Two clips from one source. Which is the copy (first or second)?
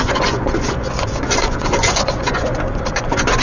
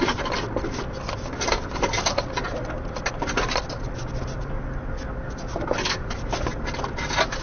first